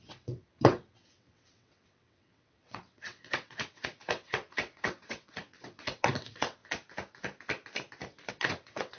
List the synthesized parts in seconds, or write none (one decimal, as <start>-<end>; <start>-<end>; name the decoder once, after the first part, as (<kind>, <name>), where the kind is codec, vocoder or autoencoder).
0.0-6.6 (vocoder, WaveNeXt); 8.3-9.0